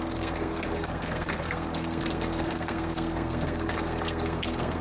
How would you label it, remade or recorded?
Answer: remade